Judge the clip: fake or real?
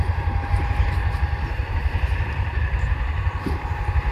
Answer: fake